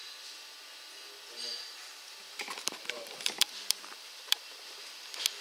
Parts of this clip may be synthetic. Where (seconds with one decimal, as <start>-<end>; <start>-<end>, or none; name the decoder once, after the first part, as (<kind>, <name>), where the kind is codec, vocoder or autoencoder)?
1.5-4.4 (vocoder, BigVGAN v2)